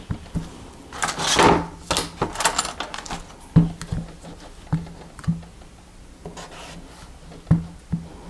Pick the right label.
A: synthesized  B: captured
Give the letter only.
B